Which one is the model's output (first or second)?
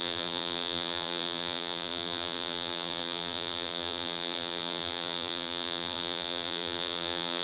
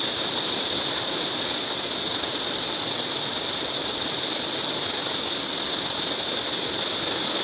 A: first